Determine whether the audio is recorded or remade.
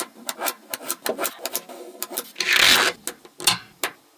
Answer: recorded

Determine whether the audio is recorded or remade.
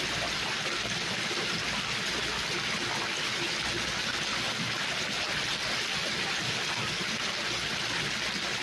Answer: recorded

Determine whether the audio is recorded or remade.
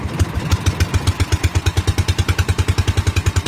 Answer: recorded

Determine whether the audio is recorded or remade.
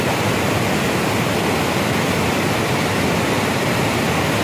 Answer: recorded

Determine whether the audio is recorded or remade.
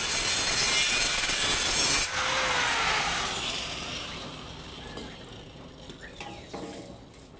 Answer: recorded